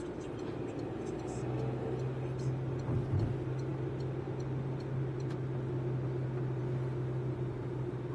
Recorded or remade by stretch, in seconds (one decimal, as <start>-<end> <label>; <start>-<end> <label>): 0.0-8.1 recorded